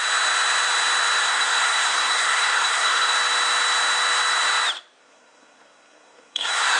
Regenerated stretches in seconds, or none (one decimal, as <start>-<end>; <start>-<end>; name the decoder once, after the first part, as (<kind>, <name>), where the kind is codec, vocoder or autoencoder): 1.2-3.1 (codec, SNAC); 5.0-6.8